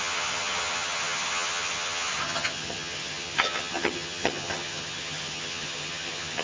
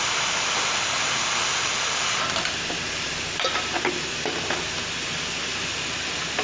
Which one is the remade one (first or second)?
first